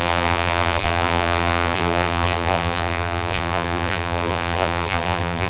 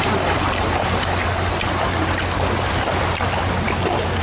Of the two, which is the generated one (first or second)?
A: first